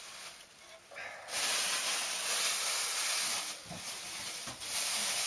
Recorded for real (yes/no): yes